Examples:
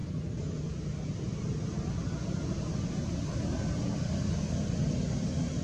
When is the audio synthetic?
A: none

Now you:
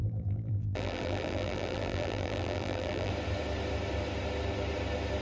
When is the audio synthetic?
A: 0.0-3.1 (vocoder, BigVGAN v2)

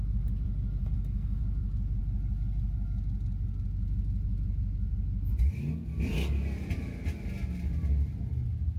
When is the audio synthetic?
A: 0.8-1.4 (codec, SNAC)

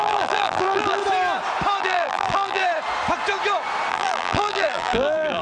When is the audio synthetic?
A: 0.0-1.0 (vocoder, BigVGAN v2); 1.8-2.6; 3.9-5.4